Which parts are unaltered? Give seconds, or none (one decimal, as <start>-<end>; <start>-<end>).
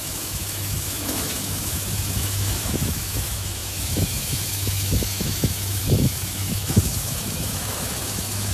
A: none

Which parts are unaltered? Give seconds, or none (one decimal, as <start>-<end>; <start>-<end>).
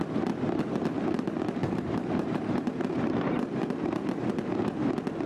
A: 0.0-1.6; 4.6-5.3